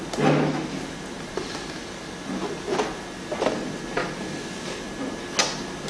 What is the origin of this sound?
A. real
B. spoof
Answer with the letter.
A